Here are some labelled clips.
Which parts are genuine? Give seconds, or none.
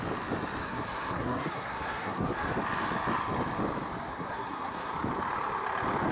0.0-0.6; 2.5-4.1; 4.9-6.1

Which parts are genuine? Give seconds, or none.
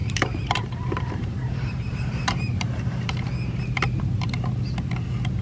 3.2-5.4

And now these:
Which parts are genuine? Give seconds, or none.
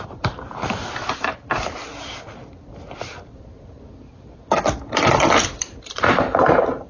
1.8-5.6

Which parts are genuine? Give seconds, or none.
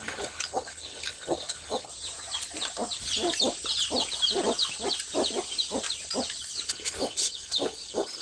1.9-6.7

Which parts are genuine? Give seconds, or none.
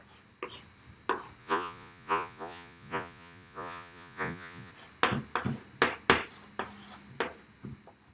0.0-1.4; 4.7-8.1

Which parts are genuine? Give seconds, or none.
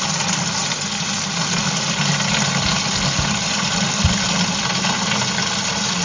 0.0-6.0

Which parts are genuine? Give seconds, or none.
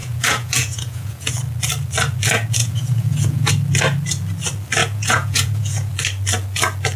1.3-2.6; 3.5-4.8; 5.9-7.0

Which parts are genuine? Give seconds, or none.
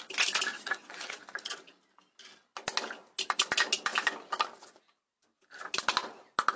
0.0-0.5; 1.2-6.6